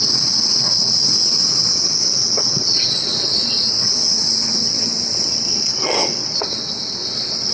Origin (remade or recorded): remade